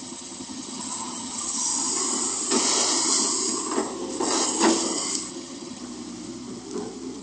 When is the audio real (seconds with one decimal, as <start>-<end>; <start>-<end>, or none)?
1.7-5.3; 5.8-7.2